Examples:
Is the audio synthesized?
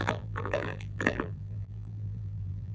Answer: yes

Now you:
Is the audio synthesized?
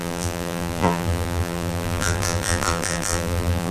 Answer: yes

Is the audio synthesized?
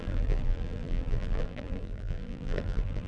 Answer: yes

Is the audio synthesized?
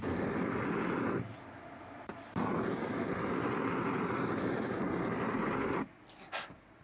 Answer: no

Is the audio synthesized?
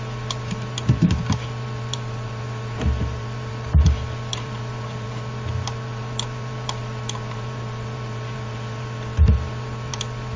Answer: yes